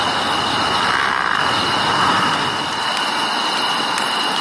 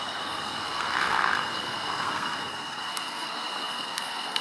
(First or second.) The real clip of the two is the first